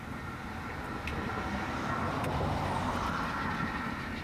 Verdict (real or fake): real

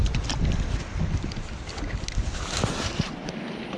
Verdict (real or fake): real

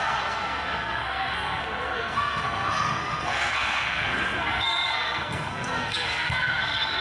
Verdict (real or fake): fake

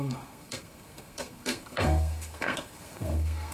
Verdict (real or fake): fake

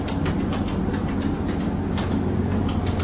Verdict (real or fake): real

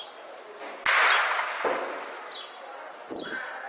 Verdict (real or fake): real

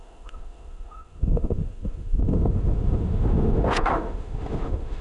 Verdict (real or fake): fake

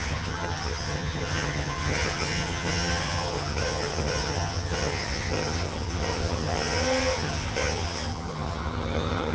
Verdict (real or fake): fake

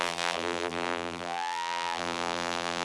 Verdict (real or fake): fake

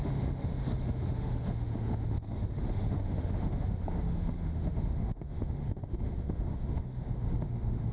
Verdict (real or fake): fake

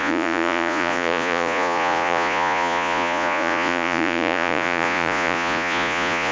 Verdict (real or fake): fake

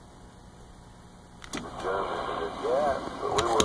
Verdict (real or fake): real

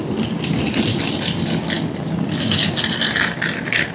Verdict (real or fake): real